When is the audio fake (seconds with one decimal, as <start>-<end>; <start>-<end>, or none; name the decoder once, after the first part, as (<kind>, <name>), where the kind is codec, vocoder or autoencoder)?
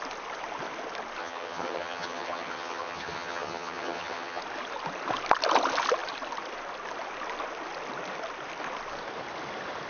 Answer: 1.2-4.4 (vocoder, HiFi-GAN)